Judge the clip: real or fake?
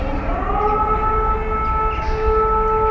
real